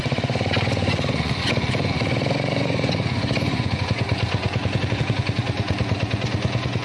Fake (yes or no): yes